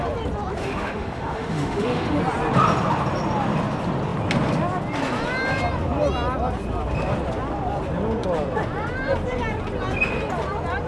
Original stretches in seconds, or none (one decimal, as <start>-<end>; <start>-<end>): 0.0-0.6; 2.2-10.9